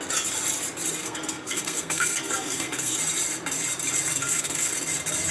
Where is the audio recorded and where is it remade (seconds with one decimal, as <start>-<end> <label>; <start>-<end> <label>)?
0.0-1.0 recorded; 1.0-3.0 remade; 3.0-4.2 recorded; 4.2-4.7 remade; 4.7-5.3 recorded

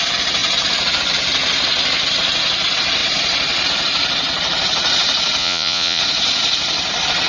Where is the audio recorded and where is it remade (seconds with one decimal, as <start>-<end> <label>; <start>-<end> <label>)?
0.0-5.4 recorded; 5.4-6.0 remade; 6.0-7.3 recorded

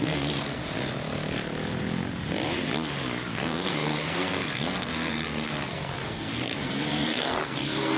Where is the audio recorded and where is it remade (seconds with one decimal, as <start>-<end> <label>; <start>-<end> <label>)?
0.0-0.6 remade; 0.6-3.3 recorded; 3.3-8.0 remade

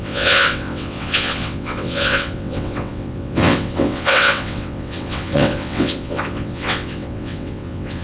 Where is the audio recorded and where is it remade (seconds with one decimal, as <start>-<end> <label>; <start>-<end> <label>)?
0.0-8.0 remade

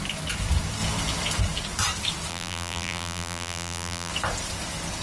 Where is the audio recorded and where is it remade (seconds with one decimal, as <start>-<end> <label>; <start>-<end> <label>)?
0.0-2.3 recorded; 2.3-4.1 remade; 4.1-5.0 recorded